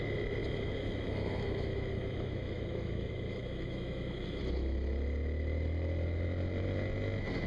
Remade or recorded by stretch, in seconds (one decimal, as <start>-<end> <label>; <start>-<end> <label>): 0.0-0.4 recorded; 0.4-4.4 remade; 4.4-7.5 recorded